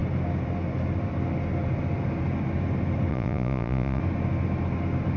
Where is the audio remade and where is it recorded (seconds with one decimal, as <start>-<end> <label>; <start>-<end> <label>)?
0.0-3.1 recorded; 3.1-4.0 remade; 4.0-5.2 recorded